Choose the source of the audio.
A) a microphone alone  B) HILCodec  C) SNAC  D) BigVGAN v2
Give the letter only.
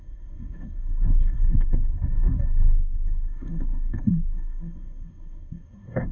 C